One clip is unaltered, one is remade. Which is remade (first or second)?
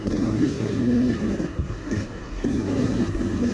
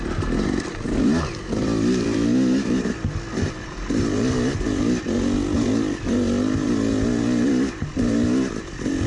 first